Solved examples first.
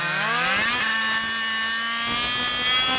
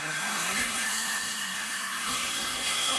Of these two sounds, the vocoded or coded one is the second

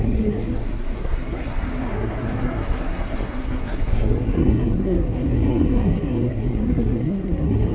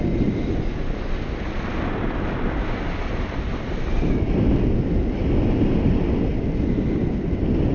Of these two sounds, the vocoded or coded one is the first